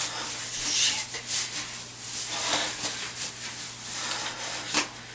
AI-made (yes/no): no